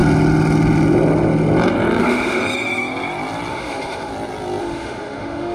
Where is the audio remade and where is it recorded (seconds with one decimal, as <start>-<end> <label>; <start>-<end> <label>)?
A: 0.0-2.0 recorded; 2.0-2.4 remade; 2.4-3.5 recorded; 3.5-4.1 remade; 4.1-4.6 recorded; 4.6-5.5 remade